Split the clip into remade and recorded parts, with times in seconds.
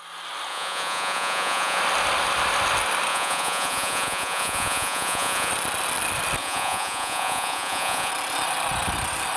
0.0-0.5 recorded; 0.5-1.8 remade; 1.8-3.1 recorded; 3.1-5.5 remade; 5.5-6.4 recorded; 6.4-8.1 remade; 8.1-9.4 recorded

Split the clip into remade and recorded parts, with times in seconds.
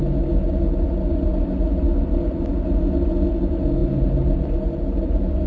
0.0-3.8 recorded; 3.8-4.4 remade; 4.4-5.5 recorded